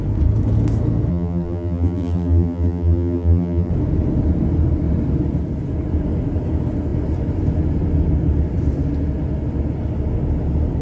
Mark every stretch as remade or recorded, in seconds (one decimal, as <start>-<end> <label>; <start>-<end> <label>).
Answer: 0.0-1.1 recorded; 1.1-3.7 remade; 3.7-10.8 recorded